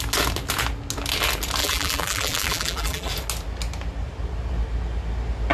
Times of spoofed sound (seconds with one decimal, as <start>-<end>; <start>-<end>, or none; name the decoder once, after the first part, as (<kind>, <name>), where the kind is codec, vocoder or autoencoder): 1.6-3.1 (vocoder, BigVGAN v2)